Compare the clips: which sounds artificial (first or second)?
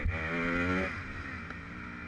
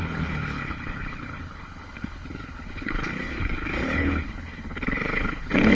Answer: second